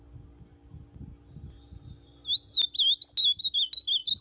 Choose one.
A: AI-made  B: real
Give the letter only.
B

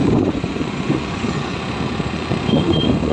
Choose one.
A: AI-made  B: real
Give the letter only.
A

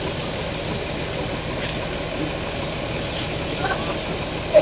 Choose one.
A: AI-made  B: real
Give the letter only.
B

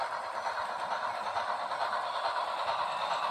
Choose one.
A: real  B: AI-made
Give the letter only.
B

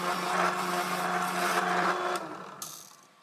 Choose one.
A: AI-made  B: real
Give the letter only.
B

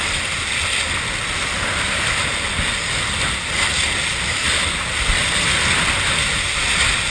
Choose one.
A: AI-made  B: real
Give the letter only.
B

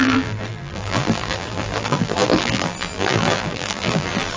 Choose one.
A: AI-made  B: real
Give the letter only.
A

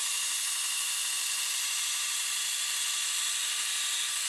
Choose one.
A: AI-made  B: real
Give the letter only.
B